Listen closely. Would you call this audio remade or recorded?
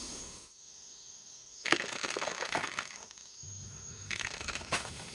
remade